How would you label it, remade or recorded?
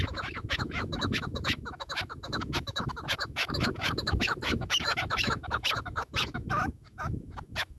remade